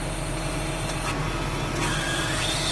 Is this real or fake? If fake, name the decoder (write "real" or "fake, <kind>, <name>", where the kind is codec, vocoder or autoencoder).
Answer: real